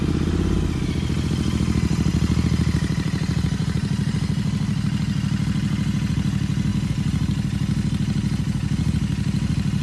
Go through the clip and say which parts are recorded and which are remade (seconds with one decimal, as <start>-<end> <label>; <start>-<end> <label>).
0.0-9.8 recorded